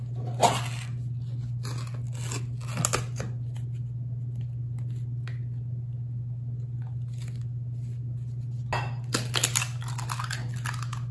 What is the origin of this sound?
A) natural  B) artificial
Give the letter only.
A